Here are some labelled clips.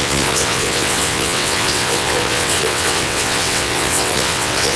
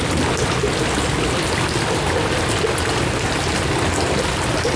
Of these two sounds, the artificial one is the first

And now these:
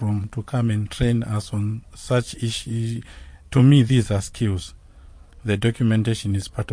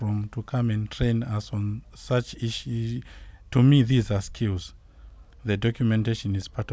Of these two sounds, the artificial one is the first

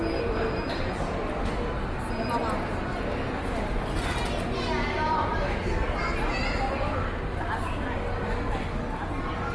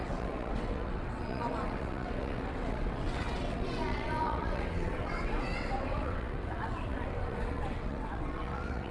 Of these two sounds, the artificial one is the second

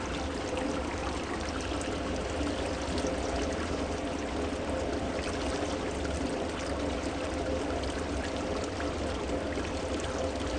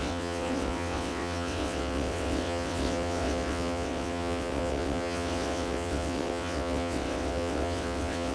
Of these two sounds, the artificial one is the second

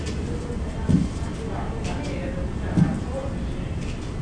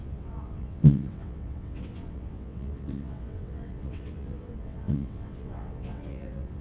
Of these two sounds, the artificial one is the second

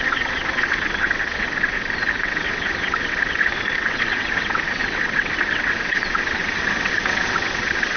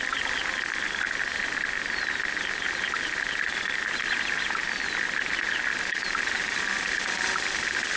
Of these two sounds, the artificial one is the first